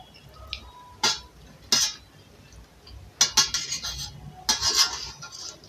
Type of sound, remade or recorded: recorded